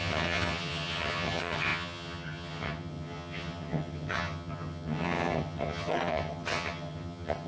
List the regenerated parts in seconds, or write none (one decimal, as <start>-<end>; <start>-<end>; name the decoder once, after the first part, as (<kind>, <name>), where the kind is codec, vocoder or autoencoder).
0.0-7.5 (vocoder, HiFi-GAN)